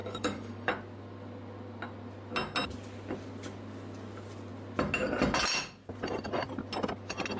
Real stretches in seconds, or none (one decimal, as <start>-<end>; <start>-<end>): 0.7-7.4